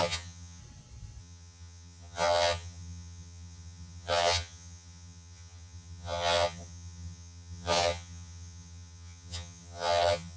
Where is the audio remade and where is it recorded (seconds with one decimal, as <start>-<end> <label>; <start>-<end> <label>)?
0.0-0.6 remade; 0.6-1.2 recorded; 1.2-10.4 remade